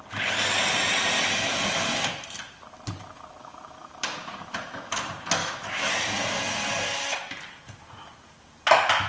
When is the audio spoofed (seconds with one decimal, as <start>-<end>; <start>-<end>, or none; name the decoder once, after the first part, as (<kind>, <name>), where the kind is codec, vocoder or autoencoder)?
3.4-5.0 (autoencoder, DAC-VAE); 5.4-5.9